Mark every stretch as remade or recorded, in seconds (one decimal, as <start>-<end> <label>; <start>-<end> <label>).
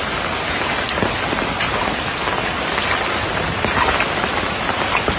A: 0.0-5.2 recorded